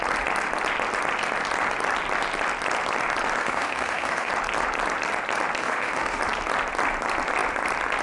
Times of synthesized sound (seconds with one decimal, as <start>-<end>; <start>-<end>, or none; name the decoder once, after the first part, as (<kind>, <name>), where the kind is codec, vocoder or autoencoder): 3.4-4.3 (autoencoder, DAC-VAE); 5.6-6.2